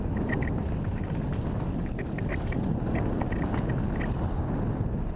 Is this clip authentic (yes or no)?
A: yes